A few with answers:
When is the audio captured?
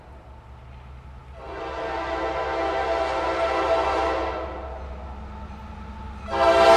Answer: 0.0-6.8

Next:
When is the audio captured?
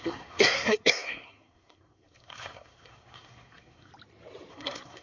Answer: 3.9-4.5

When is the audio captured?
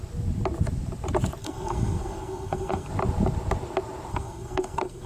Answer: 0.0-1.4; 2.9-4.1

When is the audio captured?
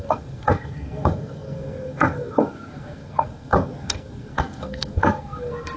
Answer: none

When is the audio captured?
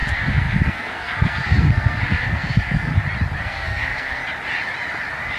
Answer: 2.9-3.4; 4.2-5.4